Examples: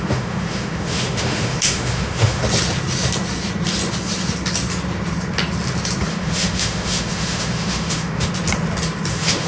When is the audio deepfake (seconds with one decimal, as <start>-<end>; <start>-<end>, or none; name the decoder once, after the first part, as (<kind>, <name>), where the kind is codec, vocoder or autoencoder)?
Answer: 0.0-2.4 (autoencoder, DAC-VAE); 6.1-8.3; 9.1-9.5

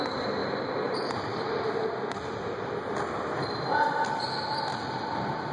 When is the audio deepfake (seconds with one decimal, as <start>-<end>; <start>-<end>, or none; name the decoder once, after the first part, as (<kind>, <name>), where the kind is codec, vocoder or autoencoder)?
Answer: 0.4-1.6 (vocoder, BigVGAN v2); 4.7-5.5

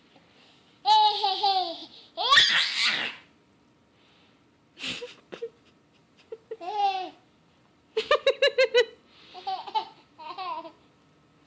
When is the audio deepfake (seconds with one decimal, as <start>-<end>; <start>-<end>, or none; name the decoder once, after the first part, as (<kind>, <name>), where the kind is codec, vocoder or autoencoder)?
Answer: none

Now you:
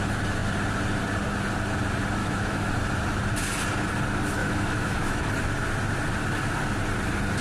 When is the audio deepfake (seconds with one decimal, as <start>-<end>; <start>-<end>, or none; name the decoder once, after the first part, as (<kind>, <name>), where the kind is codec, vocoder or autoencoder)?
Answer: 2.2-2.7 (autoencoder, DAC-VAE); 4.4-5.3

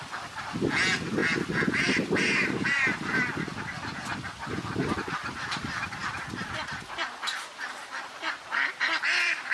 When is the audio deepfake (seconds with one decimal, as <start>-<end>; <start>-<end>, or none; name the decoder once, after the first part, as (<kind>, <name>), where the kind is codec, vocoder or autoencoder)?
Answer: 0.0-9.5 (vocoder, BigVGAN v2)